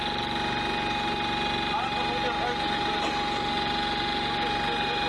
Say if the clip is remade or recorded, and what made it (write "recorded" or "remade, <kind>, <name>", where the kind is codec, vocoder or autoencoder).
recorded